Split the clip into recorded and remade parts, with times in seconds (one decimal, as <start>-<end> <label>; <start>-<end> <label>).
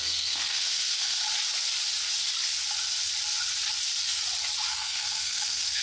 0.0-1.2 remade; 1.2-4.7 recorded; 4.7-5.8 remade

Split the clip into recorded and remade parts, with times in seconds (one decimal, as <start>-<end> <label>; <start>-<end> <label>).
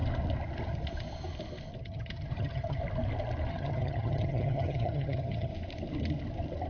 0.0-1.8 recorded; 1.8-2.8 remade; 2.8-3.5 recorded; 3.5-5.5 remade; 5.5-6.7 recorded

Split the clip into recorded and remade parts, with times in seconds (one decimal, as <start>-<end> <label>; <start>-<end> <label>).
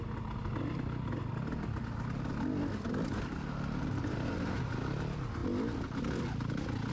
0.0-6.9 recorded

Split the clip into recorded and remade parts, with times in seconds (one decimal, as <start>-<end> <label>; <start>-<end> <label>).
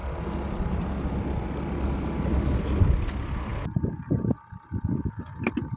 0.0-5.8 recorded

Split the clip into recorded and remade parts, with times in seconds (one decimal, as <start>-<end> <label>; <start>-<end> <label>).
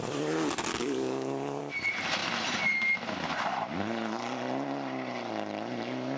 0.0-0.7 recorded; 0.7-1.6 remade; 1.6-6.2 recorded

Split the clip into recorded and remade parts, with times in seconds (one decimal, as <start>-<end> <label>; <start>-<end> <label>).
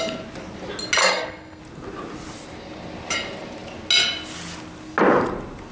0.0-1.0 recorded; 1.0-1.6 remade; 1.6-5.7 recorded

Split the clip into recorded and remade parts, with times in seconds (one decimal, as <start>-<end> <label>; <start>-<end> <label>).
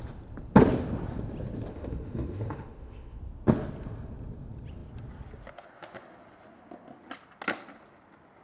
0.0-1.7 recorded; 1.7-3.2 remade; 3.2-8.4 recorded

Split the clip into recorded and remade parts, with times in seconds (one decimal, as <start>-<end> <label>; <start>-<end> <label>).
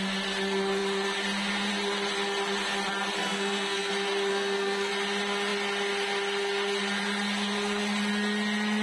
0.0-3.2 recorded; 3.2-3.9 remade; 3.9-4.3 recorded; 4.3-4.9 remade; 4.9-8.8 recorded